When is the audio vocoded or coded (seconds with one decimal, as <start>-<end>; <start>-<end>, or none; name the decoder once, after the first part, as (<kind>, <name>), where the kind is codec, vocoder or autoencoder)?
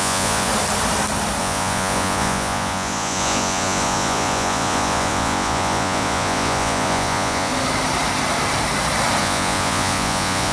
0.0-0.5 (vocoder, Vocos); 1.4-7.5; 9.2-10.5